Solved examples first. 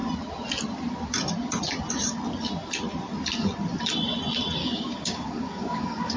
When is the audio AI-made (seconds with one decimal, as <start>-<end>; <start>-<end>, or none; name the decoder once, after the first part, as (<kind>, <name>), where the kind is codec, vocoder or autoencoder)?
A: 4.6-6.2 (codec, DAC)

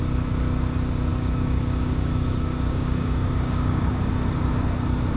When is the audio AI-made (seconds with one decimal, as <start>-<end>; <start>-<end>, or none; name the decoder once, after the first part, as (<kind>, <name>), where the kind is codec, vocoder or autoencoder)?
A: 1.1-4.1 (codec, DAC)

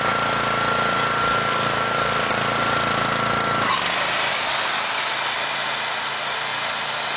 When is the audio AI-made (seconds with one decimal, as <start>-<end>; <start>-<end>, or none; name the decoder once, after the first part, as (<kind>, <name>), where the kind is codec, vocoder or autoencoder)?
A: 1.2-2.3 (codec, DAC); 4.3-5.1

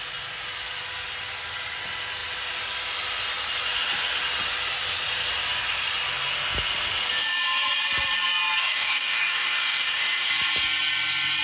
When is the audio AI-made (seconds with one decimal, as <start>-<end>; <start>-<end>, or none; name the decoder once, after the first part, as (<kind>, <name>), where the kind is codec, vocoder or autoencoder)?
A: 8.6-10.3 (codec, DAC)

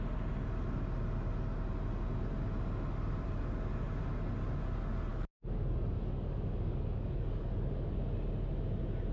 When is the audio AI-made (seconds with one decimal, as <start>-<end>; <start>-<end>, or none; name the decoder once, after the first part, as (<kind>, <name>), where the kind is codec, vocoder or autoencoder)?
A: 5.1-8.0 (codec, DAC)

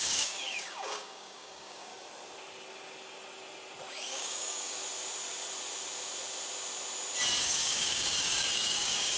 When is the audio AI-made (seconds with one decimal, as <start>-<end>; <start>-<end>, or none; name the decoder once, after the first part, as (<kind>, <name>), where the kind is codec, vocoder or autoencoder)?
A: 0.0-1.9 (codec, DAC); 3.9-4.8; 7.4-9.2

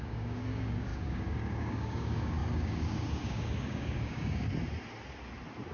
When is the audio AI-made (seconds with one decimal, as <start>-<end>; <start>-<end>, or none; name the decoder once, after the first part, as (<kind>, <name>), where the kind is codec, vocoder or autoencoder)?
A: 0.0-4.5 (codec, DAC)